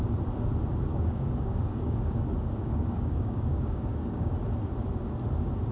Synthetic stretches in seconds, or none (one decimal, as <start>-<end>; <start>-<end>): 0.9-4.3